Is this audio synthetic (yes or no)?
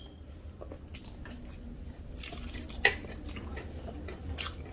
no